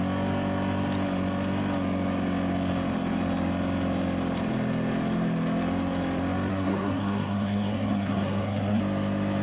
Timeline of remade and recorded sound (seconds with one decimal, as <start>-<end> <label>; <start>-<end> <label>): 0.0-6.5 recorded; 6.5-8.8 remade; 8.8-9.4 recorded